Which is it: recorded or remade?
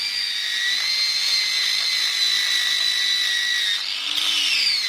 recorded